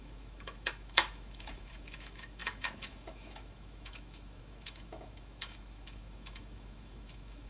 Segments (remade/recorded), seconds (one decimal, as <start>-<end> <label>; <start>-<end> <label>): 0.0-7.5 remade